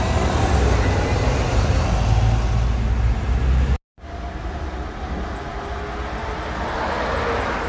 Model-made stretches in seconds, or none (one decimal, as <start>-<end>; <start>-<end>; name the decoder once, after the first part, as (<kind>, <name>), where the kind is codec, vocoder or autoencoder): none